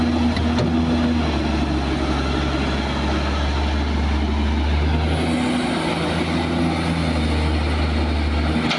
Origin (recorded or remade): recorded